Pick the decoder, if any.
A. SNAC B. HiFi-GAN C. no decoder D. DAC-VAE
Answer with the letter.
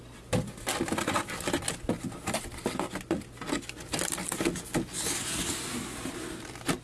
C